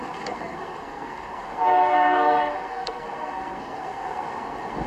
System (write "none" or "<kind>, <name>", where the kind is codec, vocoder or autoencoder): codec, SNAC